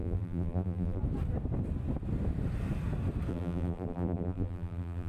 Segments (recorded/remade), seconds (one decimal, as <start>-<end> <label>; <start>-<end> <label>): 0.0-1.0 remade; 1.0-3.3 recorded; 3.3-5.1 remade